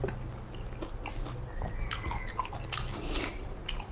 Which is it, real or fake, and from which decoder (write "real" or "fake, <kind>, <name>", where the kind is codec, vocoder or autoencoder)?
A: real